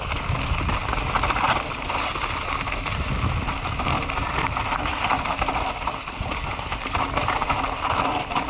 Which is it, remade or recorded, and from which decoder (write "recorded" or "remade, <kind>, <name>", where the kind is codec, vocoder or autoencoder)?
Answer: recorded